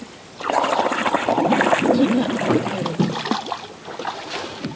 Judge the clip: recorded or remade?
recorded